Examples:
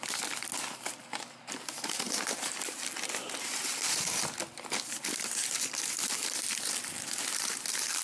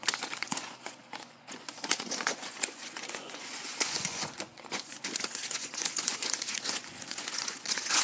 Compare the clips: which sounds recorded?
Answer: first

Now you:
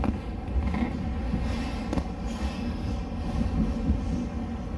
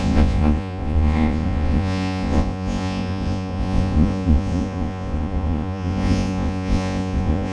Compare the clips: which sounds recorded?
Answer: first